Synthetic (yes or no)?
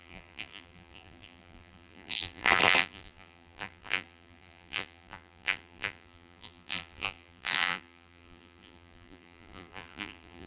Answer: yes